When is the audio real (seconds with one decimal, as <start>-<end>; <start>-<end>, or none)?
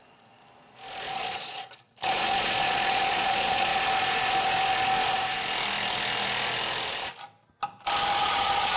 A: 0.4-1.1; 3.7-8.2